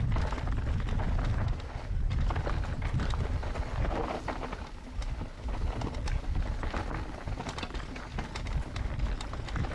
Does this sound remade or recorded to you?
recorded